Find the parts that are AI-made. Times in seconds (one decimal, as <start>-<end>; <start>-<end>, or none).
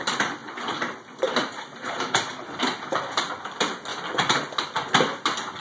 0.4-3.2; 3.9-4.4